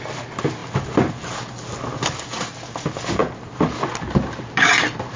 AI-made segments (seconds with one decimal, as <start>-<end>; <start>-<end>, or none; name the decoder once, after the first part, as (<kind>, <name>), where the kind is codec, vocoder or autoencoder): none